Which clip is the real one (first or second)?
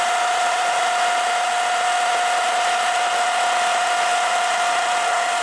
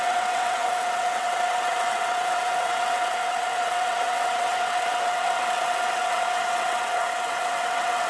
first